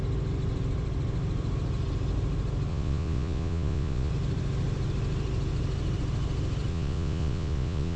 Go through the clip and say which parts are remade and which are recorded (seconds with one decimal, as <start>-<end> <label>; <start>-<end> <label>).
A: 0.0-2.7 recorded; 2.7-4.1 remade; 4.1-6.7 recorded; 6.7-8.0 remade